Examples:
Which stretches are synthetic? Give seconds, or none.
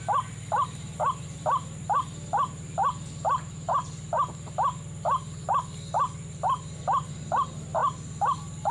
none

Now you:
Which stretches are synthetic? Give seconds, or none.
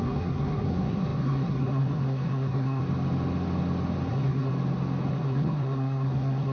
0.0-2.8 (codec, SNAC); 4.1-4.5; 5.1-6.5